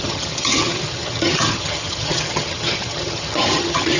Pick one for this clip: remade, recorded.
remade